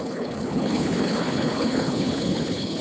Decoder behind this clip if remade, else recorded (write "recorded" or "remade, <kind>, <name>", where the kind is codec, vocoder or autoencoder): remade, codec, HILCodec